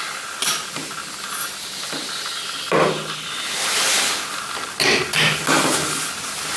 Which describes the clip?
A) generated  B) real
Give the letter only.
B